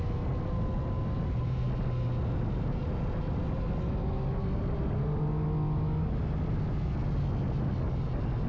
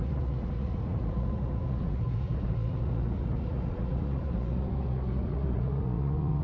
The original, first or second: first